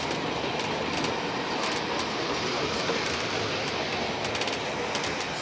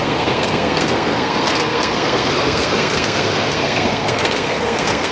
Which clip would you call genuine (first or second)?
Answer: first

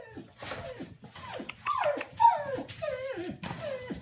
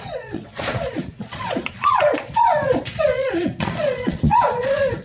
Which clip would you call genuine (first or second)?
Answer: first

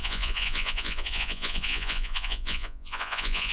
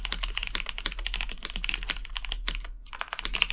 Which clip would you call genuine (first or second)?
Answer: second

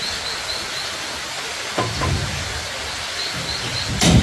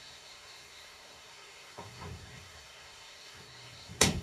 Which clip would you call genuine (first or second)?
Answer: first